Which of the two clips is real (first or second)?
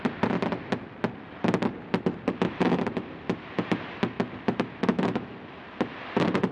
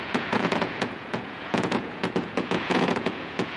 first